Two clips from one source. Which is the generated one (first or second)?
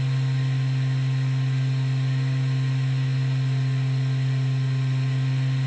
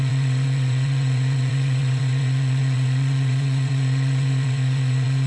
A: second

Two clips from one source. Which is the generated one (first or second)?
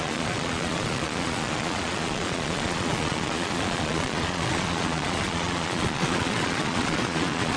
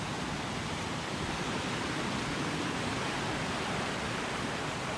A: first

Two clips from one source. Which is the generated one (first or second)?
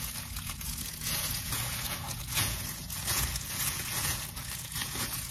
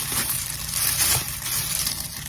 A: first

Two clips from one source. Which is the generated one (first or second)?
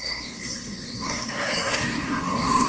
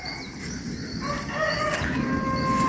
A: first